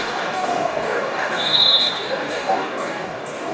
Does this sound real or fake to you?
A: fake